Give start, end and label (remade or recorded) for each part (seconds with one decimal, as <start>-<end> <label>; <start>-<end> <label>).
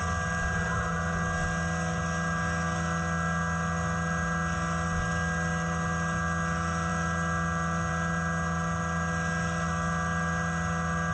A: 0.0-11.1 recorded